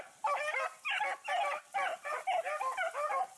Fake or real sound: real